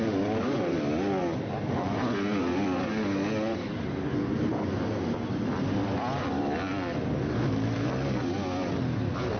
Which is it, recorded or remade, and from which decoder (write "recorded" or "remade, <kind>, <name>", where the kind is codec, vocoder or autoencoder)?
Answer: recorded